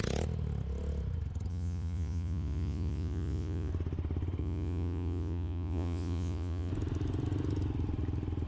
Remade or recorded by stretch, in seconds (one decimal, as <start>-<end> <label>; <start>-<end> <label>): 0.0-1.5 recorded; 1.5-3.7 remade; 3.7-4.4 recorded; 4.4-6.7 remade; 6.7-8.5 recorded